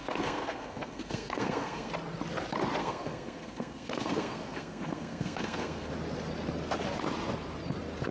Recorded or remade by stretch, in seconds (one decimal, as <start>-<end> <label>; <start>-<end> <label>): 0.0-1.9 remade; 1.9-2.8 recorded; 2.8-5.9 remade; 5.9-8.1 recorded